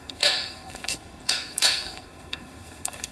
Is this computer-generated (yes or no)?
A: yes